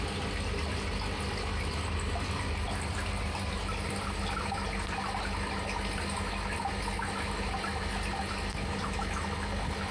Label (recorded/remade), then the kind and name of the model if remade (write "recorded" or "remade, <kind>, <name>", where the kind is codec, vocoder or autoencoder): recorded